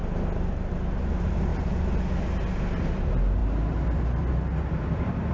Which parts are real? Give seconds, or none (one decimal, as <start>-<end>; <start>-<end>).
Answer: 0.0-1.5; 2.2-3.4